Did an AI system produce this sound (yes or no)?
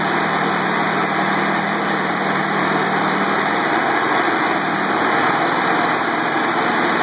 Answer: yes